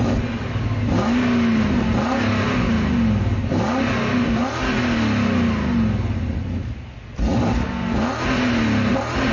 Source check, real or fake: real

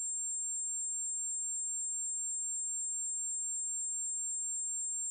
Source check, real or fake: real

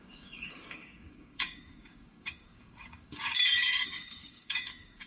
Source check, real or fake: fake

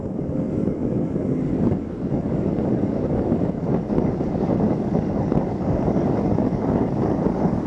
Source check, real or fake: fake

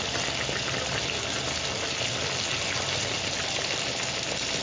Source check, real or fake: real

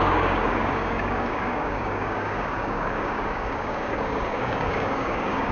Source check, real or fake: fake